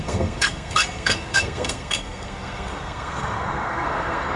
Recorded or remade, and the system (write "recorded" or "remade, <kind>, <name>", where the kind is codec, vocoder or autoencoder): remade, codec, SNAC